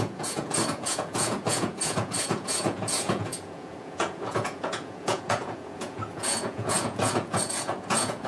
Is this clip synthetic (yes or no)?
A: yes